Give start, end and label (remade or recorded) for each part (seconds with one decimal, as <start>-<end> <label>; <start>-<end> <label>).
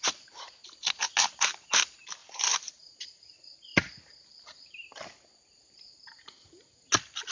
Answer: 0.0-2.2 recorded; 2.2-2.7 remade; 2.7-7.3 recorded